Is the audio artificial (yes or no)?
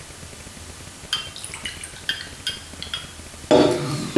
no